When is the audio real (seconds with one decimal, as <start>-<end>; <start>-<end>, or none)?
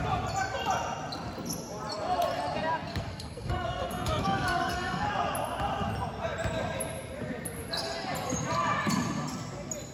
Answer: 0.0-2.9; 5.1-9.9